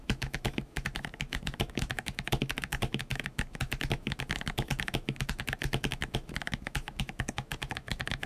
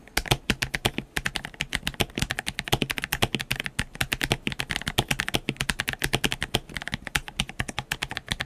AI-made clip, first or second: first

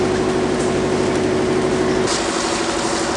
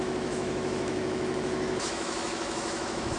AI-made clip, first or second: second